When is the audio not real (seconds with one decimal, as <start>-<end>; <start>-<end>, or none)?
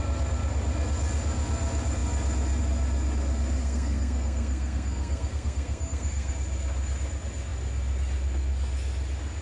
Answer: 3.6-6.3